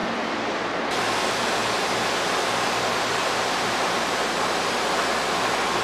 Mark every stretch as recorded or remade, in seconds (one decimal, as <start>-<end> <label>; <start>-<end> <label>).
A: 0.0-0.5 remade; 0.5-1.6 recorded; 1.6-4.2 remade; 4.2-5.8 recorded